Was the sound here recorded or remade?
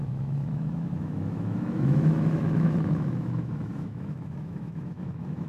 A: remade